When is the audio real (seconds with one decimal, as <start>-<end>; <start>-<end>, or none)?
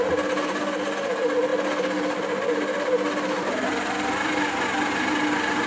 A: 0.0-5.7